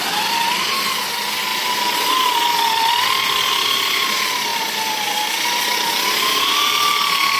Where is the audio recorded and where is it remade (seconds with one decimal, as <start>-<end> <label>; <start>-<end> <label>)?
0.0-7.4 recorded